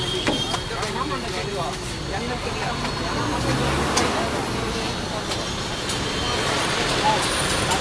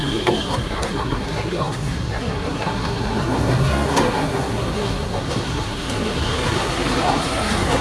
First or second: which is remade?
second